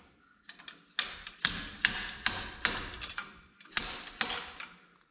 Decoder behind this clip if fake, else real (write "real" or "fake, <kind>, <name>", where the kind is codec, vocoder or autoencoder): real